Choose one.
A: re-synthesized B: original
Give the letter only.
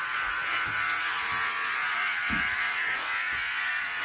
A